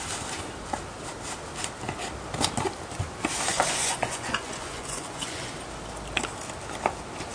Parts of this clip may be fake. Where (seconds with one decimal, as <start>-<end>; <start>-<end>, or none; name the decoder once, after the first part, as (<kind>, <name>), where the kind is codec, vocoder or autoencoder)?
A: 3.5-5.5 (vocoder, Vocos)